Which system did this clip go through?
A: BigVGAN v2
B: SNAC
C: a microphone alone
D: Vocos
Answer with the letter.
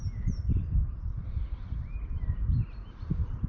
C